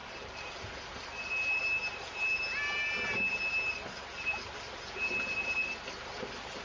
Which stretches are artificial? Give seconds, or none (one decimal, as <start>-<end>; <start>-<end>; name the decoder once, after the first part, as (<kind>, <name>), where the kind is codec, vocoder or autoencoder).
none